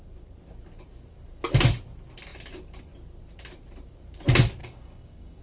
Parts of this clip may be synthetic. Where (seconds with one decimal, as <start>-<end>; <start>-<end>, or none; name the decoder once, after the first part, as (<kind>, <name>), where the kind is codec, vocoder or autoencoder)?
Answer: 4.6-5.4 (codec, DAC)